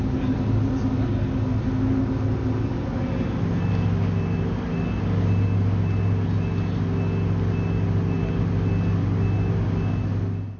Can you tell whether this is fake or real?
real